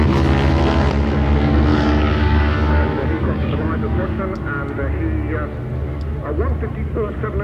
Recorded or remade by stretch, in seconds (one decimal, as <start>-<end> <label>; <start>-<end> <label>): 0.0-1.7 recorded; 1.7-4.2 remade; 4.2-7.4 recorded